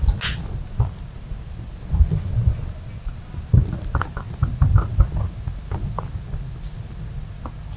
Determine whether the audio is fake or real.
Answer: real